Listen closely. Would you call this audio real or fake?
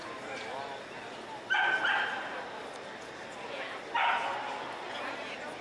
real